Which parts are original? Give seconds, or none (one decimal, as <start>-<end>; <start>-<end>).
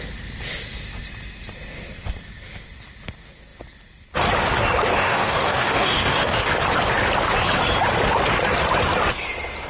0.0-4.9; 6.5-9.7